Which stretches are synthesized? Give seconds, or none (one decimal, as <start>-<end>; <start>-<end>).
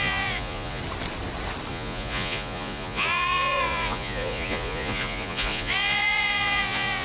0.0-0.8; 1.7-7.0